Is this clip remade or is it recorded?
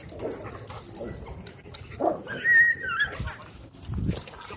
recorded